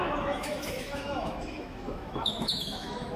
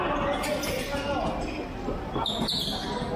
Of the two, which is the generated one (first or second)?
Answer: first